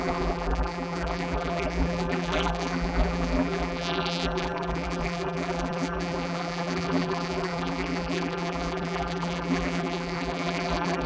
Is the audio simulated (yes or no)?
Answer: yes